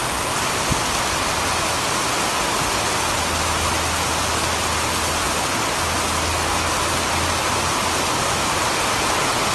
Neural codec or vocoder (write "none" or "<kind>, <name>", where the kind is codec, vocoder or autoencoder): none